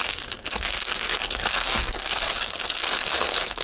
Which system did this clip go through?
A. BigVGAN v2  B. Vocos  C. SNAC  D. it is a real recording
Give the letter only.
C